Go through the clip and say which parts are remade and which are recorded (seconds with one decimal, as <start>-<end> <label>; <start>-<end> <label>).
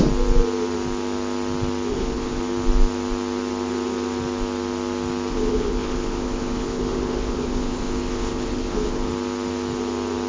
0.0-1.9 recorded; 1.9-2.4 remade; 2.4-5.3 recorded; 5.3-9.1 remade; 9.1-10.3 recorded